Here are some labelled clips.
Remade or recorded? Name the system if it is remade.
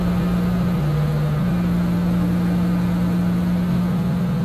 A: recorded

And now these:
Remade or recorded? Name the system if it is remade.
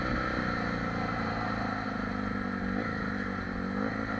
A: recorded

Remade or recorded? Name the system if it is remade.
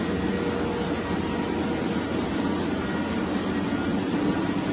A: recorded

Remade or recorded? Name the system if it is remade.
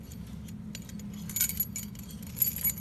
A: recorded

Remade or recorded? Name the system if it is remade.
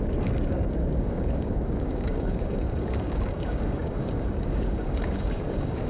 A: remade, codec, DAC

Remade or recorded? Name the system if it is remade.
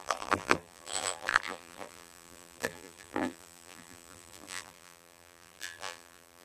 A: remade, vocoder, BigVGAN v2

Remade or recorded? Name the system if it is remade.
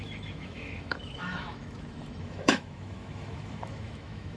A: remade, autoencoder, DAC-VAE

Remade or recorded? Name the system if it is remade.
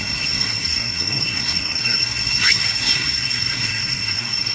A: remade, codec, SNAC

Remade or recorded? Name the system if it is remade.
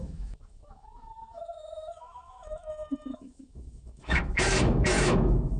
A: remade, autoencoder, DAC-VAE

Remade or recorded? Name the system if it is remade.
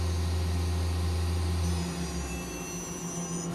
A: recorded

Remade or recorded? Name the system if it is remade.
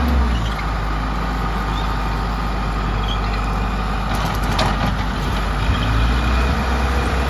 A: recorded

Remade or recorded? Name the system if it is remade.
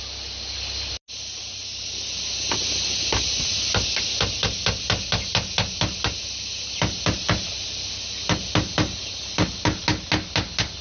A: recorded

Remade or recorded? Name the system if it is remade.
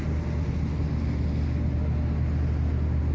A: recorded